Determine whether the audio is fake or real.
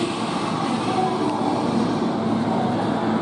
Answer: real